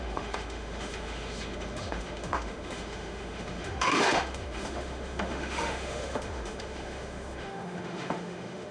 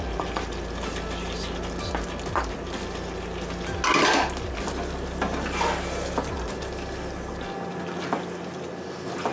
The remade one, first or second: first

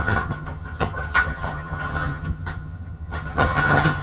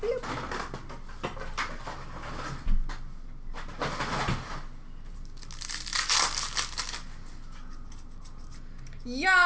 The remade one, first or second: first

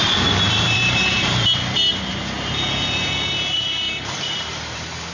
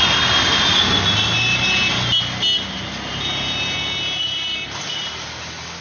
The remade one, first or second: first